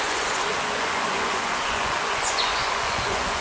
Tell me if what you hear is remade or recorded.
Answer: remade